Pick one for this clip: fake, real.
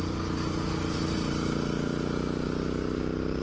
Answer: real